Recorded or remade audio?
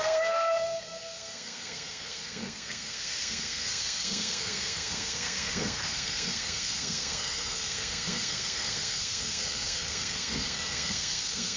remade